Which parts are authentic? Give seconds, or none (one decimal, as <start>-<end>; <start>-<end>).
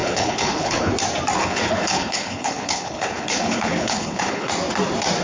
0.9-1.4; 4.5-5.2